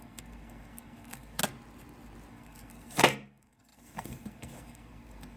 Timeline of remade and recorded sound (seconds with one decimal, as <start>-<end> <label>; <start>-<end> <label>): 0.0-1.4 remade; 1.4-2.3 recorded; 2.3-5.4 remade